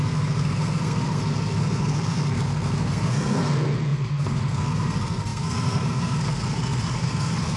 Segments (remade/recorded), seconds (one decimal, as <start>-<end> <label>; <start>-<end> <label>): 0.0-7.6 remade